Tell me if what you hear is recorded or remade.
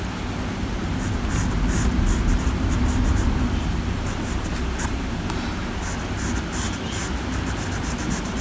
recorded